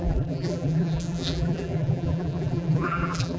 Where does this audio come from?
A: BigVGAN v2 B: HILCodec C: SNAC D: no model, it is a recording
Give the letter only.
A